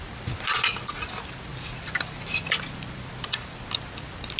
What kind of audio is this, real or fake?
real